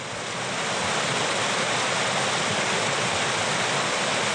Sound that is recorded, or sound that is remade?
recorded